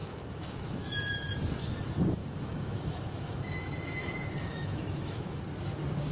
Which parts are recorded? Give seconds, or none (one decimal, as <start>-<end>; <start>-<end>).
1.3-2.2; 5.4-6.1